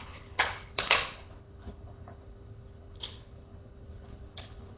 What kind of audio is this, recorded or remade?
remade